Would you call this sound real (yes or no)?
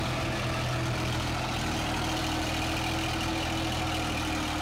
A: yes